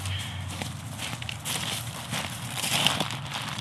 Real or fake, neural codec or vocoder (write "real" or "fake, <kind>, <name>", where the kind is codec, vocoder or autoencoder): real